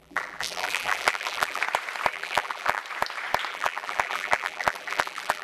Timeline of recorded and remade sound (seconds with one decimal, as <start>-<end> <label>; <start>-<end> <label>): 0.0-1.6 remade; 1.6-2.1 recorded; 2.1-2.8 remade; 2.8-3.5 recorded; 3.5-5.4 remade